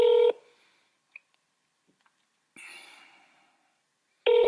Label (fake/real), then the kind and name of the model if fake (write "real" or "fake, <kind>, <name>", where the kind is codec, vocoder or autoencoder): real